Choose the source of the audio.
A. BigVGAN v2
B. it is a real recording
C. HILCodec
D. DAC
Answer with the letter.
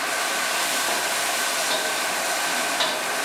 B